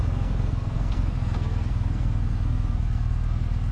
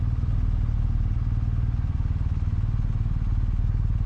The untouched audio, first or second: second